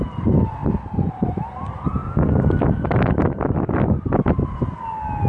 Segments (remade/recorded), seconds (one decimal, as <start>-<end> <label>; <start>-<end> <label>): 0.0-0.6 remade; 0.6-1.1 recorded; 1.1-2.0 remade; 2.0-5.3 recorded